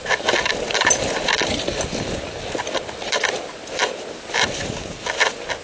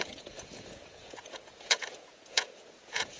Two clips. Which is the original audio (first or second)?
first